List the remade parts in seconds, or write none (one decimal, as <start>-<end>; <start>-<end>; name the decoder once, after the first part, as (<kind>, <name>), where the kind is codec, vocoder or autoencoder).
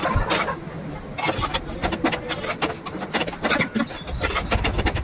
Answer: none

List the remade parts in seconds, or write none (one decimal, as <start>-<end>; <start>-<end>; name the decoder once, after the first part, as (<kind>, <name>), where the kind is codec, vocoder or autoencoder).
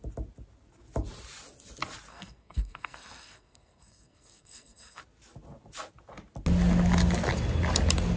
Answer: 2.1-5.0 (codec, SNAC)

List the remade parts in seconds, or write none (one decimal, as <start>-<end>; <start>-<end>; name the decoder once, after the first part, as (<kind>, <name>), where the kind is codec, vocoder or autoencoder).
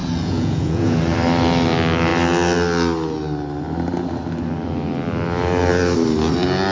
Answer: 0.0-1.0 (vocoder, Vocos)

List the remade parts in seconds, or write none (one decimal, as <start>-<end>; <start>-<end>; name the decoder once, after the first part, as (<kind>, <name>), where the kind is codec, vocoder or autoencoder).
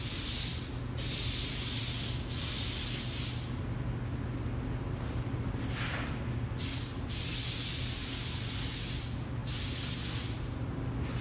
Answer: none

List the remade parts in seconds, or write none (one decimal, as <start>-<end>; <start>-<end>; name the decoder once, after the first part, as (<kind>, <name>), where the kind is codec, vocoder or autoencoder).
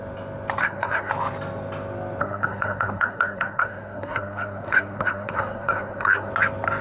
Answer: 0.6-1.1 (codec, SNAC); 2.2-6.3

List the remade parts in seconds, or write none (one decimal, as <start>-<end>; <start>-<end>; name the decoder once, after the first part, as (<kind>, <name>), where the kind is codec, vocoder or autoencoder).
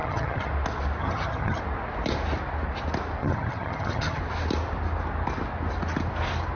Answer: 0.0-0.5 (vocoder, HiFi-GAN); 1.0-1.6; 3.2-4.2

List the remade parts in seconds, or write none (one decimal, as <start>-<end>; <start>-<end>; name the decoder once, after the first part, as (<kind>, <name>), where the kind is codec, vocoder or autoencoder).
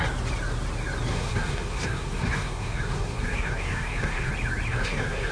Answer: 1.1-4.3 (codec, SNAC); 4.7-5.3